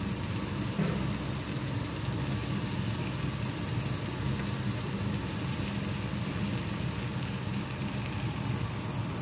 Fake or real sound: real